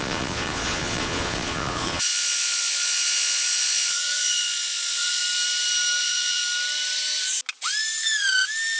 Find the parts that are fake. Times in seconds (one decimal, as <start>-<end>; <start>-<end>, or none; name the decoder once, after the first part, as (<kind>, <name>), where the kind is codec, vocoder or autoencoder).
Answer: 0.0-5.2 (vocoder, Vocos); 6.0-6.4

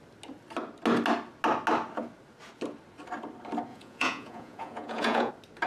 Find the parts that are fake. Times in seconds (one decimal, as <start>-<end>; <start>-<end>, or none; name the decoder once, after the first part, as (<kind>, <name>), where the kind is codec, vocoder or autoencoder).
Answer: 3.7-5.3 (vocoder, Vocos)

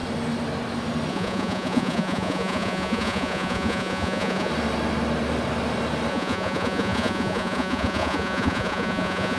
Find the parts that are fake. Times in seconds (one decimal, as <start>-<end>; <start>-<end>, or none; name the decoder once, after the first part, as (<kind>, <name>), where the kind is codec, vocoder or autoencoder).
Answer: 1.1-4.5 (vocoder, Vocos); 6.1-9.4

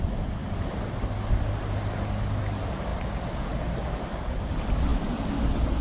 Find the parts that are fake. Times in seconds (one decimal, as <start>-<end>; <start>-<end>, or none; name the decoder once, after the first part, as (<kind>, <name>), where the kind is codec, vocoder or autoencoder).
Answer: none